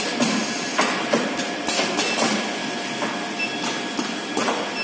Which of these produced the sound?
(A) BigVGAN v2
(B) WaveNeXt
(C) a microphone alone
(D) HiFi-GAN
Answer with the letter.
C